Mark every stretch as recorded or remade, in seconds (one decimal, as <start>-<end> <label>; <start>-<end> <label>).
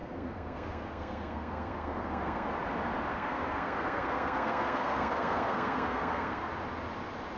0.0-2.5 remade; 2.5-3.1 recorded; 3.1-6.5 remade; 6.5-7.4 recorded